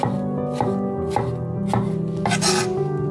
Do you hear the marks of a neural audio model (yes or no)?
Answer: no